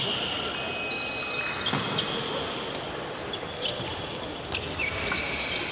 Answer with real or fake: real